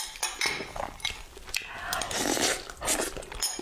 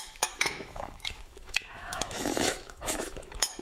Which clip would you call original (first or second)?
first